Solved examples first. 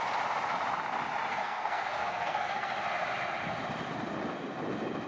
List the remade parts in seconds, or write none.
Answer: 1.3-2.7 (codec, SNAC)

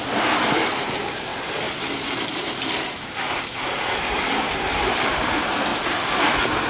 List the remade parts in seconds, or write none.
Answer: none

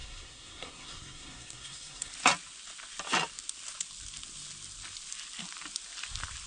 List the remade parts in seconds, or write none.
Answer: 0.0-2.1 (codec, SNAC)

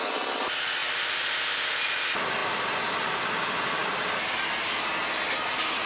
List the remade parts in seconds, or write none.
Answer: none

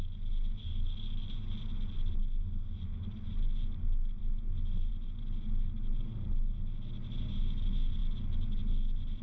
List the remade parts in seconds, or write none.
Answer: none

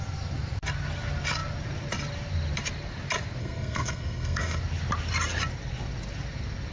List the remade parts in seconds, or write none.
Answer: 3.4-4.6 (codec, SNAC)

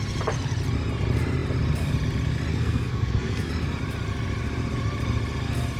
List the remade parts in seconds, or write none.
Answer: 2.5-3.5 (codec, SNAC)